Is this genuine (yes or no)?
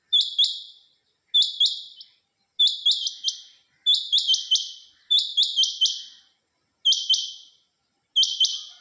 yes